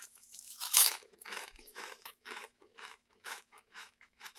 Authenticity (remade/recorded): remade